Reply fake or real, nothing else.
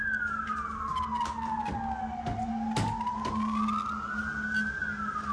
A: real